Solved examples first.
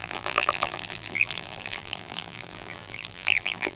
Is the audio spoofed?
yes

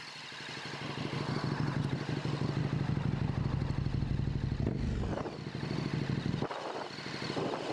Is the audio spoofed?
no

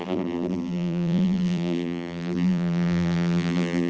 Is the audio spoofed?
yes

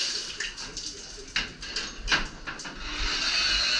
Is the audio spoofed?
no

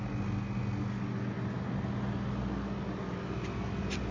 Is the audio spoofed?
no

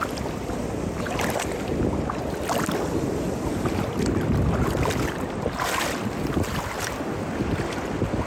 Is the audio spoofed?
no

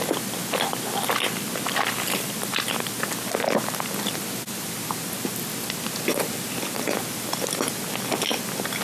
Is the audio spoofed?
no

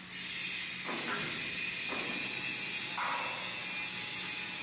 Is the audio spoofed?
no